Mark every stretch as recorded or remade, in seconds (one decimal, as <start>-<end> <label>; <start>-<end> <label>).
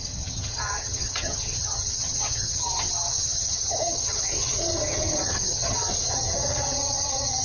0.0-7.4 remade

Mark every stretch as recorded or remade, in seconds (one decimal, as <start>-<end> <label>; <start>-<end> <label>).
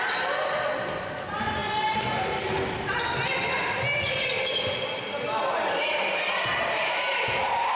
0.0-7.7 recorded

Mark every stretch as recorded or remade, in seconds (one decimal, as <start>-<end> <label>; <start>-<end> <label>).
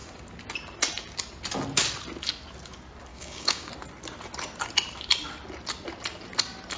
0.0-3.1 recorded; 3.1-3.7 remade; 3.7-6.8 recorded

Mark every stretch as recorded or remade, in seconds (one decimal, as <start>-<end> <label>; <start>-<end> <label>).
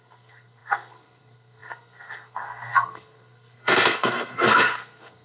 0.0-5.2 remade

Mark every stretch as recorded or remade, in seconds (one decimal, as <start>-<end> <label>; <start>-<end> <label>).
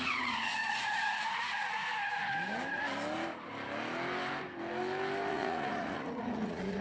0.0-1.8 remade; 1.8-5.3 recorded; 5.3-6.8 remade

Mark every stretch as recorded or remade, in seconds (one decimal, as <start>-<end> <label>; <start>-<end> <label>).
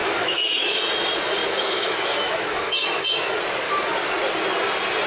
0.0-0.8 remade; 0.8-1.4 recorded; 1.4-3.4 remade; 3.4-5.1 recorded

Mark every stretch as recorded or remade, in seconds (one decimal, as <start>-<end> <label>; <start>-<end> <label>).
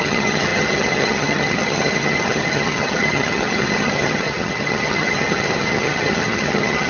0.0-6.9 remade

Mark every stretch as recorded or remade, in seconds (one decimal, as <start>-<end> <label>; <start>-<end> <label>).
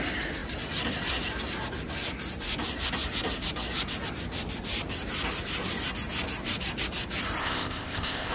0.0-7.4 recorded; 7.4-8.3 remade